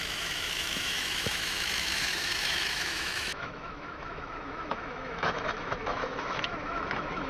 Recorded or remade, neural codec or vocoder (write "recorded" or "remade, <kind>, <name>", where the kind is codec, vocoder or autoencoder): remade, autoencoder, DAC-VAE